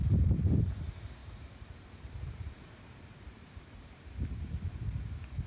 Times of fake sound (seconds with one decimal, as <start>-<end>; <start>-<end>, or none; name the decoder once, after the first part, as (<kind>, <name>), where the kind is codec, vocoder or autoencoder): 1.2-4.5 (vocoder, BigVGAN v2)